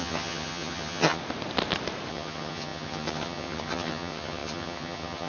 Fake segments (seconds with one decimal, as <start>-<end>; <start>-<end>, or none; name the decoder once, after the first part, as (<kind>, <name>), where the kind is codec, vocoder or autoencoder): 0.0-1.2 (vocoder, HiFi-GAN); 2.1-5.3